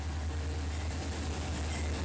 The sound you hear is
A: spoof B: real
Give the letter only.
B